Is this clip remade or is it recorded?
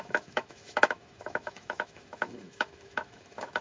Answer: remade